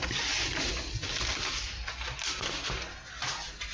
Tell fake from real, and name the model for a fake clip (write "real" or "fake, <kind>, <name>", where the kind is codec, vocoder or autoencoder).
real